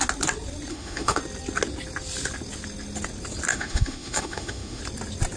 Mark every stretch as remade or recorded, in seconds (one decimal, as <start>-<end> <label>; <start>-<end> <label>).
0.0-0.7 recorded; 0.7-1.2 remade; 1.2-3.5 recorded; 3.5-4.8 remade; 4.8-5.4 recorded